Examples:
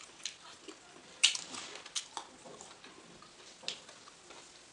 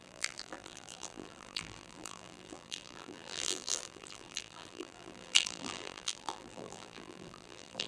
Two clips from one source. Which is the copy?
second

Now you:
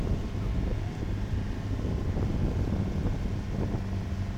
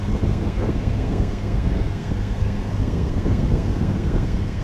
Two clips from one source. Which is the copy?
second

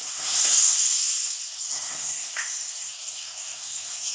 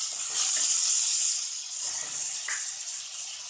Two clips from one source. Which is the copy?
first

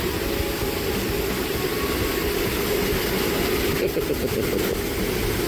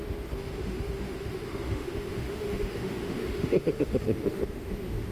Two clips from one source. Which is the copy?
second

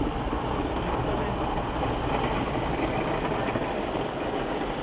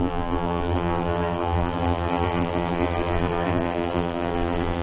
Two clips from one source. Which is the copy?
second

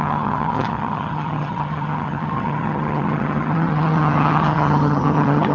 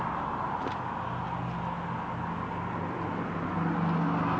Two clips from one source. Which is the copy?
first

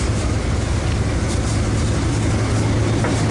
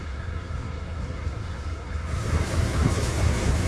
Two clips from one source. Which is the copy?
second